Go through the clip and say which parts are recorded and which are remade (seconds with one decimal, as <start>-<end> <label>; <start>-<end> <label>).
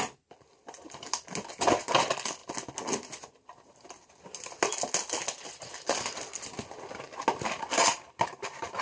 0.0-8.8 recorded